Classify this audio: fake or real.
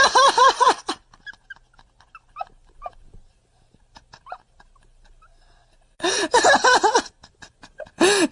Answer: real